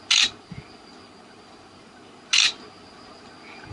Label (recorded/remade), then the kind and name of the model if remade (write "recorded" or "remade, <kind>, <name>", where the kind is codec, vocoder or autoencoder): recorded